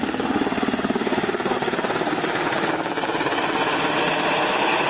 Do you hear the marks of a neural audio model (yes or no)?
no